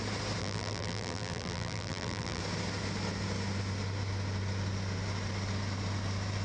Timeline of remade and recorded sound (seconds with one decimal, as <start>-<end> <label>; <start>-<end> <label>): 0.0-0.4 recorded; 0.4-2.4 remade; 2.4-6.4 recorded